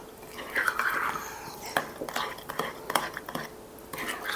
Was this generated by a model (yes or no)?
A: no